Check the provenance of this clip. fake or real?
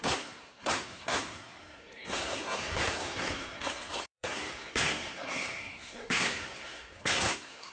fake